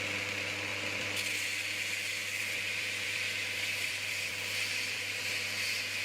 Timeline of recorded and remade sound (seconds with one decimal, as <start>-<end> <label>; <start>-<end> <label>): 0.0-0.7 recorded; 0.7-1.4 remade; 1.4-2.4 recorded; 2.4-5.2 remade; 5.2-6.0 recorded